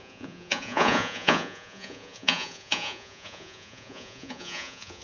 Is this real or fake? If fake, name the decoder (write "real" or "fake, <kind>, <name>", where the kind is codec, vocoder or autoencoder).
fake, vocoder, Vocos